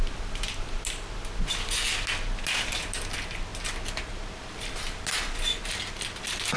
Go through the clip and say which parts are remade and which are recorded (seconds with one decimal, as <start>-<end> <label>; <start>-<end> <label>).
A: 0.0-6.6 recorded